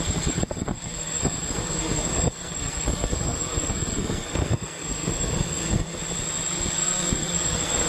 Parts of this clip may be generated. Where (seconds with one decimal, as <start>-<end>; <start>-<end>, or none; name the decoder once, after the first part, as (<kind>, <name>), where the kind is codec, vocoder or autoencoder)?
0.0-6.0 (codec, SNAC); 6.5-7.9